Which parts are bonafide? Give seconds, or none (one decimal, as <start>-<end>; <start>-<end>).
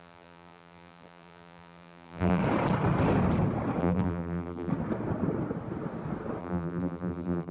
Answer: 2.4-3.8; 4.7-6.4